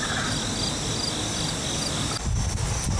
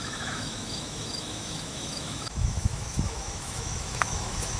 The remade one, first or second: second